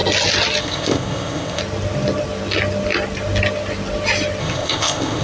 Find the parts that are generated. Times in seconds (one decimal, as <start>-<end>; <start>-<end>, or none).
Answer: 0.6-1.6; 4.4-5.2